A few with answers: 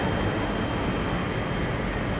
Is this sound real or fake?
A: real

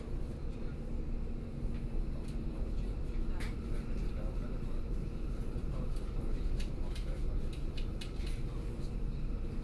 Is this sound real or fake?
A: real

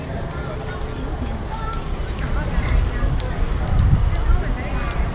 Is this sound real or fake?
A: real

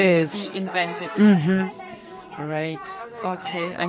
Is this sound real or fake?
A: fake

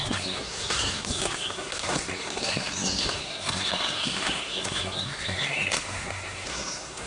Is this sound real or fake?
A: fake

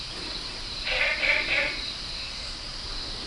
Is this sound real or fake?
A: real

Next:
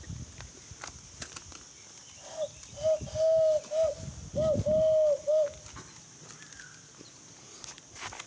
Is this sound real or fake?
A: real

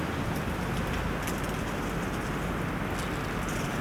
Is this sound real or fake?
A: real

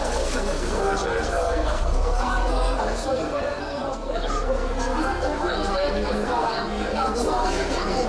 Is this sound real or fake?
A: fake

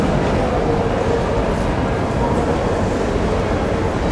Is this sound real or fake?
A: real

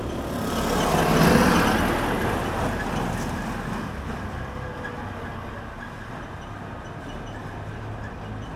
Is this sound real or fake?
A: real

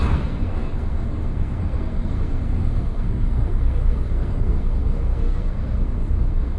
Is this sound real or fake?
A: fake